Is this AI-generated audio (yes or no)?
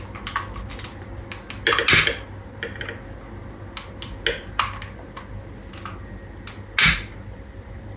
no